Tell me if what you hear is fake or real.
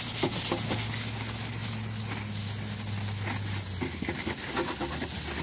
real